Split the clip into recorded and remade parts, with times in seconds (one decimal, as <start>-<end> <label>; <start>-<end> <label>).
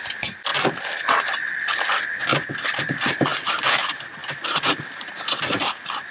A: 0.0-4.2 recorded; 4.2-5.5 remade; 5.5-6.1 recorded